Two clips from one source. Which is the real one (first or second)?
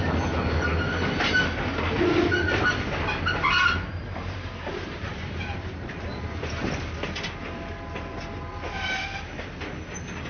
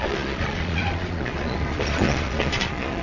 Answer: first